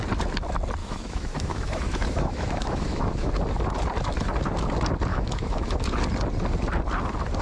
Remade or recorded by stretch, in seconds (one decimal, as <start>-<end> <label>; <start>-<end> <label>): 0.0-0.8 recorded; 0.8-3.3 remade; 3.3-5.1 recorded; 5.1-5.9 remade; 5.9-7.4 recorded